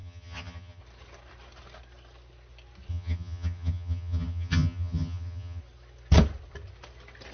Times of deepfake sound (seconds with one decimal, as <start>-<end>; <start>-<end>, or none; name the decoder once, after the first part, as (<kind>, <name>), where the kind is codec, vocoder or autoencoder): 0.0-0.8 (vocoder, HiFi-GAN); 2.9-5.6